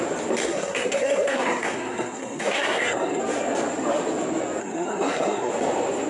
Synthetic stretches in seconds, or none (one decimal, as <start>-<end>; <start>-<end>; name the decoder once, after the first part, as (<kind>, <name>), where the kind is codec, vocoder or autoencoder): 0.4-3.2 (codec, SNAC); 4.6-5.5